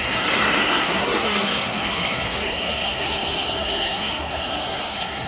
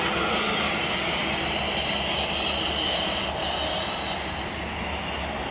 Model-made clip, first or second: first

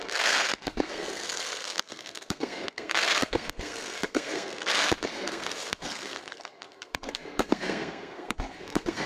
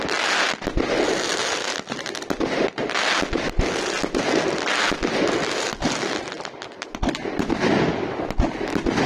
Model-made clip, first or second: first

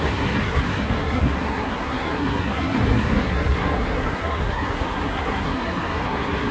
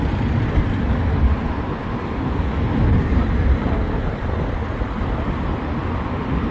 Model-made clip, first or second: first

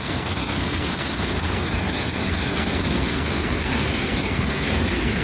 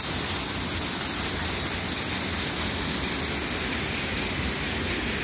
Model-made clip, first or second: first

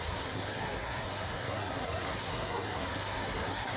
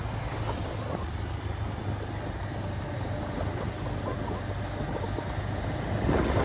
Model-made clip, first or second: first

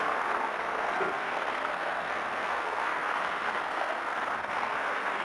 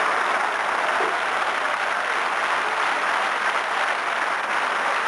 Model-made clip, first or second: first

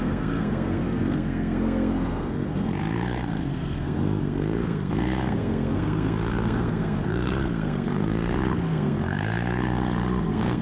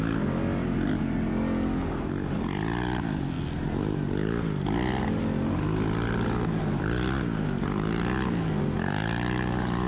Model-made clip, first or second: first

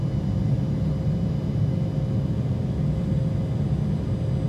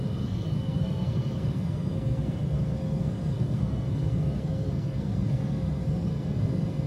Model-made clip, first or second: second